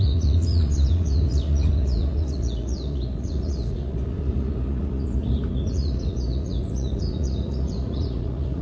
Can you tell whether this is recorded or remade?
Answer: remade